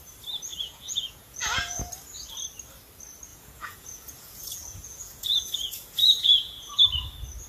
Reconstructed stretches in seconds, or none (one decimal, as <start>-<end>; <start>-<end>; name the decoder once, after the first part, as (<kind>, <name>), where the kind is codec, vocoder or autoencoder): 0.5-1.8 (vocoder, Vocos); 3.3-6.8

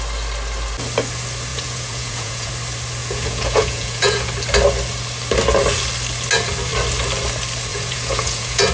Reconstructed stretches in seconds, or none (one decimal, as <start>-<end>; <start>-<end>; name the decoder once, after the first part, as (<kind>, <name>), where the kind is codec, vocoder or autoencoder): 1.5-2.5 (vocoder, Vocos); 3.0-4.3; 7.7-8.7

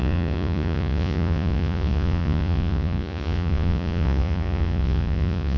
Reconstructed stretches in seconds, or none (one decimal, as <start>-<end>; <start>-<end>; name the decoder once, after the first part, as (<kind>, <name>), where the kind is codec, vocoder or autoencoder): 0.0-5.6 (vocoder, Vocos)

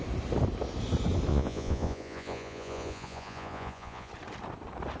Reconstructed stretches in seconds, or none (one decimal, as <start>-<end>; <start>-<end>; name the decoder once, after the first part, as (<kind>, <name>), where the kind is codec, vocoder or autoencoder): 1.3-4.1 (vocoder, Vocos)

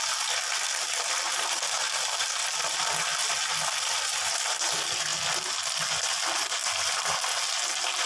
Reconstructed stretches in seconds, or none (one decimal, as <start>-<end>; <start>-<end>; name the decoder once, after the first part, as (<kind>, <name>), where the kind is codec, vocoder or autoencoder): none

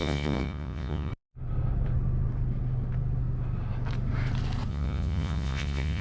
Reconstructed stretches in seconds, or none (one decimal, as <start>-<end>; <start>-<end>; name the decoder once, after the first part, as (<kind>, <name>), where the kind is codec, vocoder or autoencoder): 0.0-1.1 (vocoder, Vocos); 4.7-6.0